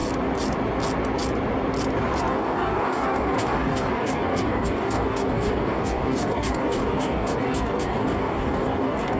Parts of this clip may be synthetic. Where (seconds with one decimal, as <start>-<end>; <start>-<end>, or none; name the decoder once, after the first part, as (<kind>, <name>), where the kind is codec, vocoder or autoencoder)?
2.3-9.2 (codec, DAC)